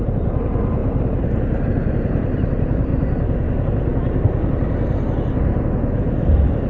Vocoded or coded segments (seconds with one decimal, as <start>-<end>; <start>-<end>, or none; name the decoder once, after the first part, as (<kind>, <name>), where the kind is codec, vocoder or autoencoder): 0.0-2.9 (vocoder, BigVGAN v2); 5.9-6.7